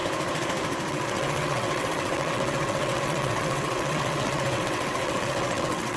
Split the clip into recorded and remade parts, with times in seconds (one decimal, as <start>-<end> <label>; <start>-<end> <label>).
0.0-0.9 recorded; 0.9-6.0 remade